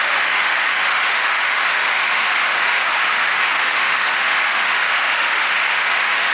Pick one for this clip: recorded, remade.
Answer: remade